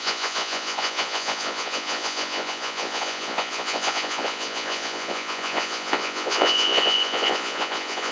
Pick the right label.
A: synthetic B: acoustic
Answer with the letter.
A